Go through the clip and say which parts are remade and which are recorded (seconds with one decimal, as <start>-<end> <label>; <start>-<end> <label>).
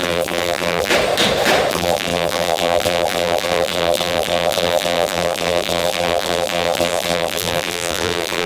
0.0-0.9 remade; 0.9-1.7 recorded; 1.7-8.5 remade